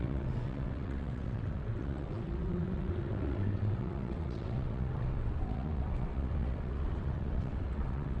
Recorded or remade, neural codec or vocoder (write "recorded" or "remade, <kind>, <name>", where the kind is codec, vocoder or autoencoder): remade, vocoder, WaveNeXt